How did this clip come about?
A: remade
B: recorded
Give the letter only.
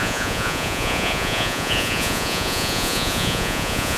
A